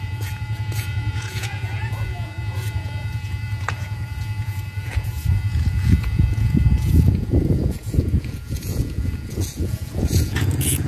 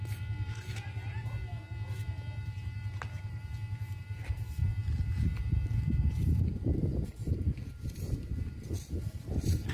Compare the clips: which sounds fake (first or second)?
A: first